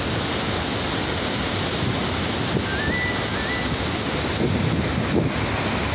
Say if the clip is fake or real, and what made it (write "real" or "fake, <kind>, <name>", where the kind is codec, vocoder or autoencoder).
real